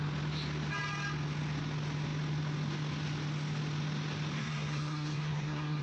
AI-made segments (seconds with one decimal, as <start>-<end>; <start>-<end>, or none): 4.4-5.8